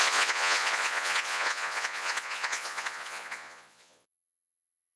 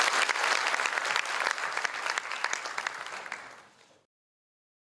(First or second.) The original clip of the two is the second